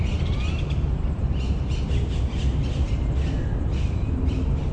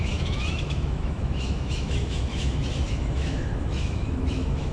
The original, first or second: first